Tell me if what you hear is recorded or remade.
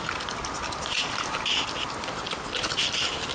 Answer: recorded